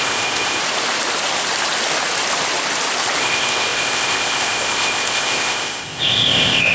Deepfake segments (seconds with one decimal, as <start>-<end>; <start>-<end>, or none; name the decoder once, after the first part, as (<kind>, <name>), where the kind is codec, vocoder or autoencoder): 0.0-0.6 (codec, ZipCodec); 3.2-6.7